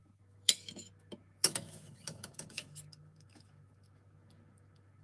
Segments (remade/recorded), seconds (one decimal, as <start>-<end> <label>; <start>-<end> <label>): 0.0-5.0 remade